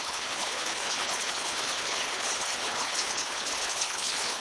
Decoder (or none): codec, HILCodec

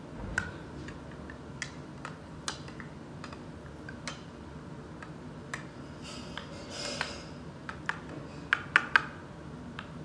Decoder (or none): none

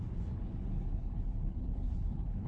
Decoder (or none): codec, HILCodec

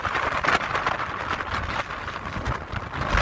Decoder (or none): none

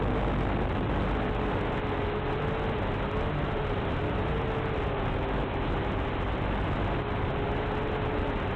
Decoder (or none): none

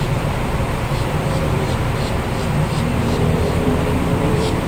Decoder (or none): vocoder, BigVGAN v2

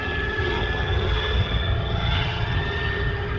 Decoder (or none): vocoder, HiFi-GAN